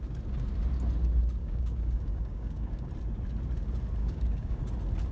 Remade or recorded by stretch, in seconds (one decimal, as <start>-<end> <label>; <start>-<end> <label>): 0.0-1.4 recorded; 1.4-2.9 remade; 2.9-4.0 recorded; 4.0-4.6 remade; 4.6-5.1 recorded